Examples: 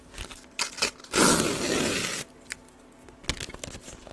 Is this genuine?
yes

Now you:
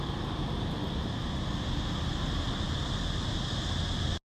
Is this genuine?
yes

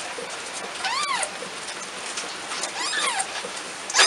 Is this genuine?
yes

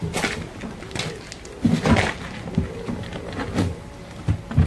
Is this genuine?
yes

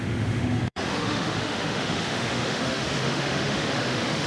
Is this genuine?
no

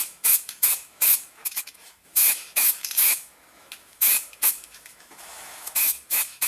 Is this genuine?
no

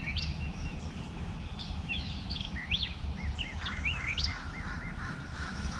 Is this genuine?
no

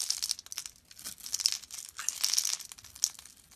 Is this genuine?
yes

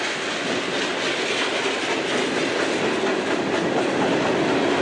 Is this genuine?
yes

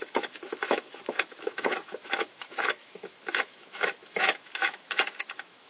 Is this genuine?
no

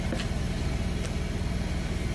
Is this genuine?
yes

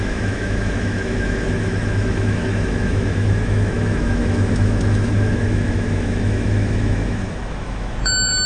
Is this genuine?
no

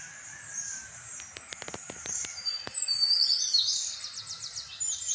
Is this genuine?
yes